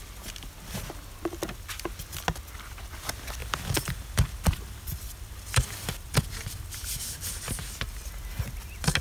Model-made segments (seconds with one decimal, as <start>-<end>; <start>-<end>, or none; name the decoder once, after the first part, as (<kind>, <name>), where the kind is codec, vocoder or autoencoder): 3.4-8.1 (vocoder, BigVGAN v2)